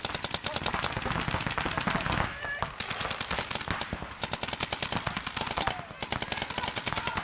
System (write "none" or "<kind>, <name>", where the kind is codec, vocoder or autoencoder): none